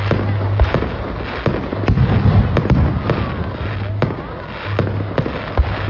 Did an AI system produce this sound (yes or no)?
no